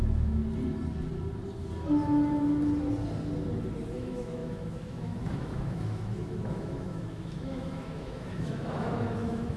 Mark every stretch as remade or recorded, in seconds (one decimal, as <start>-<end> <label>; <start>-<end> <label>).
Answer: 0.0-0.4 remade; 0.4-4.0 recorded; 4.0-9.6 remade